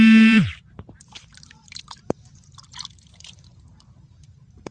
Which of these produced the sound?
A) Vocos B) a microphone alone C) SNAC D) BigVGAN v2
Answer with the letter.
D